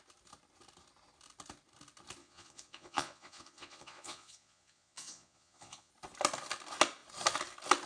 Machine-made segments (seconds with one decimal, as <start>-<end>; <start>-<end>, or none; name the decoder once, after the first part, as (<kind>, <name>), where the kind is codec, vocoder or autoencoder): 2.2-5.9 (vocoder, Vocos)